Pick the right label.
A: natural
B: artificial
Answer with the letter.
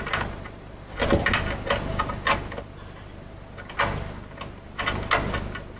A